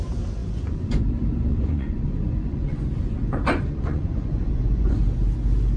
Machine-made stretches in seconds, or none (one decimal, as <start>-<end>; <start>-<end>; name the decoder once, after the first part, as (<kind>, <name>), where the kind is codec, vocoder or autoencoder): 0.4-1.0 (vocoder, Vocos); 1.5-5.0